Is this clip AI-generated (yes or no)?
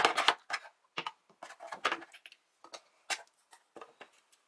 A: no